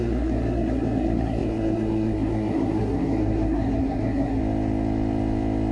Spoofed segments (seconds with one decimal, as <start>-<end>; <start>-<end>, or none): 0.0-4.4